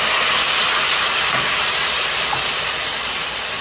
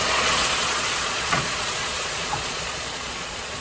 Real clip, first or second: first